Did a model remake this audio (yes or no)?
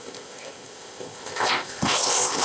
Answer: yes